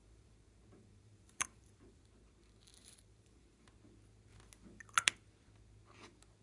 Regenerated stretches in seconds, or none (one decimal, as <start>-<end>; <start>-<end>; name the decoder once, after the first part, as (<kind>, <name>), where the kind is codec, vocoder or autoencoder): 0.0-2.0 (vocoder, BigVGAN v2); 2.8-3.6